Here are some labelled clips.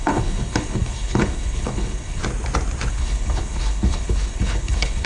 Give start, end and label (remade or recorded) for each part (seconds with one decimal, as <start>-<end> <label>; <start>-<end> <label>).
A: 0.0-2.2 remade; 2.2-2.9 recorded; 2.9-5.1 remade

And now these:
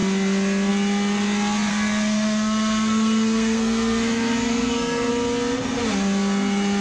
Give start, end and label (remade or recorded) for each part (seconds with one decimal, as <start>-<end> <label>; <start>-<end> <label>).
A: 0.0-1.7 recorded; 1.7-5.1 remade; 5.1-6.8 recorded

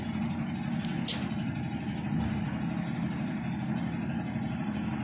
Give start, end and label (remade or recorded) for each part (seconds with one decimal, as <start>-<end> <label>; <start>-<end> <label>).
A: 0.0-5.0 recorded

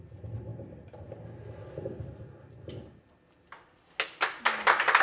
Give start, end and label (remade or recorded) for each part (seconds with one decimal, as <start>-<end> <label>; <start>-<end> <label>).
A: 0.0-5.0 recorded

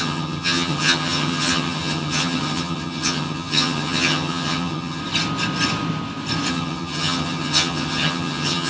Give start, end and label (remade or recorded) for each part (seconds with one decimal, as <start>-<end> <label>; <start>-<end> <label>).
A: 0.0-5.0 remade; 5.0-6.5 recorded; 6.5-8.7 remade